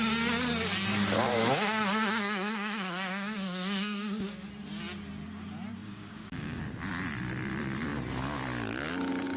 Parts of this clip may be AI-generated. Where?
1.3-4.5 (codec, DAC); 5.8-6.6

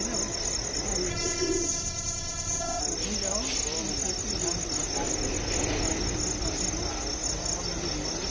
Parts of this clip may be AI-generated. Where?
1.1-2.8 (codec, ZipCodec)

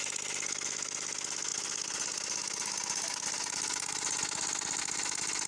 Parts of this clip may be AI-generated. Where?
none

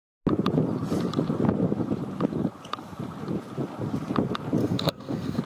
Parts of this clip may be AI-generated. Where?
4.6-5.4 (codec, SNAC)

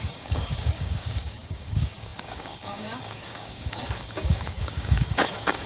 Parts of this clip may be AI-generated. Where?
0.0-5.7 (codec, DAC)

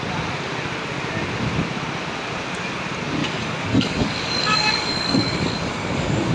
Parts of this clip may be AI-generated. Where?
3.2-6.3 (codec, DAC)